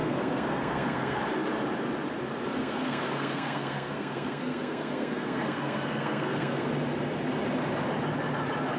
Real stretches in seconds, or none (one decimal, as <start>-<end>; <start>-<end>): 1.2-2.6; 6.7-8.8